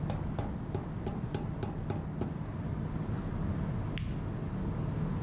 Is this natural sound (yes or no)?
yes